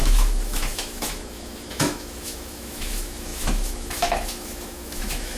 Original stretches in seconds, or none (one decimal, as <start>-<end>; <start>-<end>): none